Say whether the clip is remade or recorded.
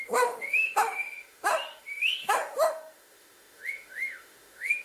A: remade